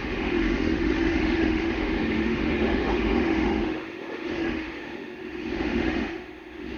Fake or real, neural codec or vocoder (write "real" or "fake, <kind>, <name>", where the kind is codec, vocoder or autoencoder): fake, autoencoder, DAC-VAE